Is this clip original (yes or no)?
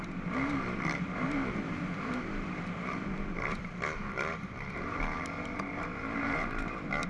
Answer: no